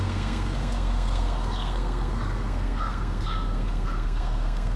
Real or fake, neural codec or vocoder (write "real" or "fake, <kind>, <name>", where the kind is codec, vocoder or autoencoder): fake, codec, SNAC